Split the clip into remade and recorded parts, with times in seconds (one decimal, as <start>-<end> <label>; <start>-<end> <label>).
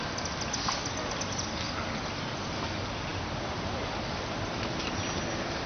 0.0-5.7 recorded